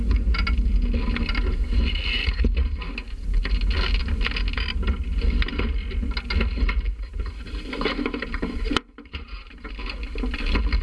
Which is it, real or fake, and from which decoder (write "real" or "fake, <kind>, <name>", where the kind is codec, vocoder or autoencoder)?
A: real